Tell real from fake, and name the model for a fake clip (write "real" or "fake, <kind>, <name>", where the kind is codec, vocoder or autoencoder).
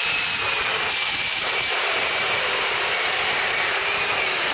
fake, vocoder, BigVGAN v2